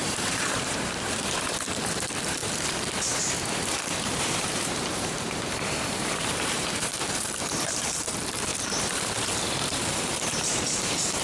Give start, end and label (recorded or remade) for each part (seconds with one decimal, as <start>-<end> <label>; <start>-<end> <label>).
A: 0.0-2.4 remade; 2.4-4.2 recorded; 4.2-8.5 remade; 8.5-9.9 recorded; 9.9-11.2 remade